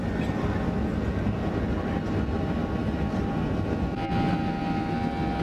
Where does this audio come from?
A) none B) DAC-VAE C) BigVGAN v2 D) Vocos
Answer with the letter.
A